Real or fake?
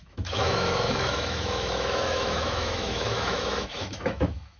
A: fake